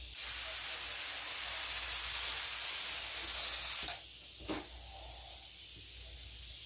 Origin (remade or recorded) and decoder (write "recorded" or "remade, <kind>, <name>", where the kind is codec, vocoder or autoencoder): recorded